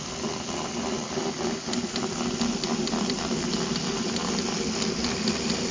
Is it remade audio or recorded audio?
recorded